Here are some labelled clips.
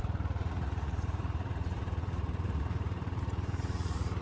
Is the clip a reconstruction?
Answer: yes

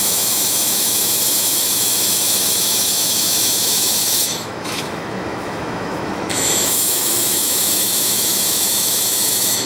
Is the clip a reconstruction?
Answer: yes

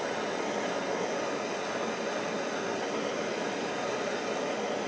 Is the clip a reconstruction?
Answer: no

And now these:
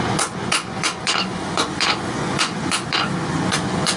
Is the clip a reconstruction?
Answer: yes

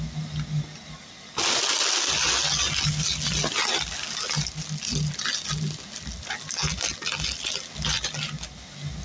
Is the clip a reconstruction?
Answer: no